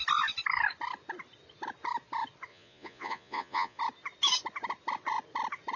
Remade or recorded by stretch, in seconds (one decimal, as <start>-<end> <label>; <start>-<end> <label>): 0.0-2.5 recorded; 2.5-3.8 remade; 3.8-5.8 recorded